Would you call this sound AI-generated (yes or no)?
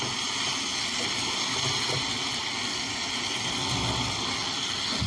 no